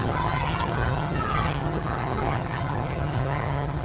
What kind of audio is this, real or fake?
fake